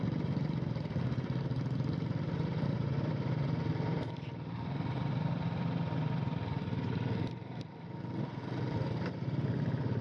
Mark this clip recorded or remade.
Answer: remade